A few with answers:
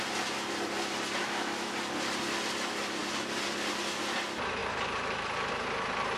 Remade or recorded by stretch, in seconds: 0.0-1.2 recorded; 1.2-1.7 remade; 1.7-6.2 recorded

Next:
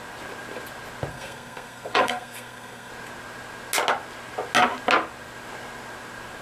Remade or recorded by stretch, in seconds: 0.0-1.1 recorded; 1.1-2.9 remade; 2.9-6.4 recorded

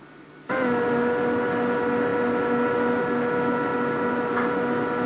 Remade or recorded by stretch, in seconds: 0.0-5.1 recorded

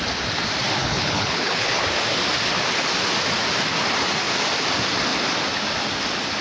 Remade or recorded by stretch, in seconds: 0.0-0.8 recorded; 0.8-1.8 remade; 1.8-6.4 recorded

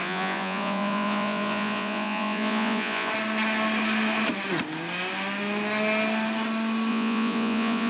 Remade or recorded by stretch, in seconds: 0.0-3.1 remade; 3.1-6.9 recorded; 6.9-7.9 remade